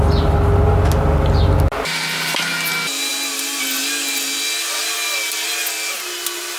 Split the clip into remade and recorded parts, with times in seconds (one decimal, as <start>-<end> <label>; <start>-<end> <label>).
0.0-6.6 recorded